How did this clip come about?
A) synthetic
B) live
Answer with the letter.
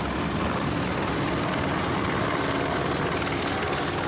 B